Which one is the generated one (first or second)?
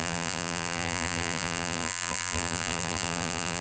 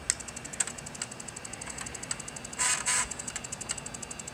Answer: first